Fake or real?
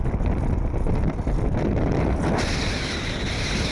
real